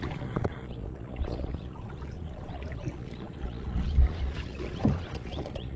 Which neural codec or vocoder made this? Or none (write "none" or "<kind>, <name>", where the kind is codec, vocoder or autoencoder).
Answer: vocoder, Vocos